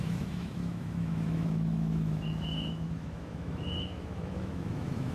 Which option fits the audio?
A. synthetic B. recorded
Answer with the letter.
A